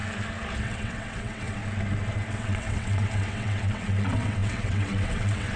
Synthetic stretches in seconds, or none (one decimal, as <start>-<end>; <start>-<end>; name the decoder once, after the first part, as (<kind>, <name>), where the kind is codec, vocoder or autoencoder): 0.6-1.6 (vocoder, WaveNeXt); 2.3-5.6